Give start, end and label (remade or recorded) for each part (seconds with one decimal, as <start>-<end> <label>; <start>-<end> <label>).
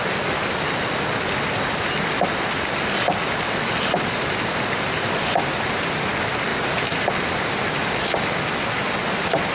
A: 0.0-9.5 recorded